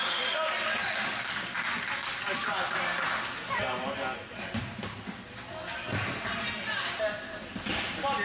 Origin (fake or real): real